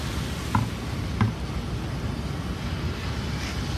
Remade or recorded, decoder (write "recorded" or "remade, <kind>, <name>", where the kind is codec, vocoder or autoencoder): recorded